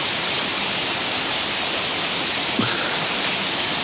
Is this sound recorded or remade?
recorded